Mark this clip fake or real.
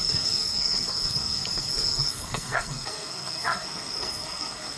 fake